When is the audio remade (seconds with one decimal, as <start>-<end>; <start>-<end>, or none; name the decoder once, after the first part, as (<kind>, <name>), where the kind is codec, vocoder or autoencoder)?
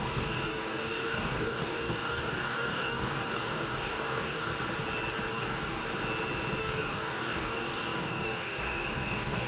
0.0-4.5 (codec, DAC); 5.3-5.8; 6.6-9.5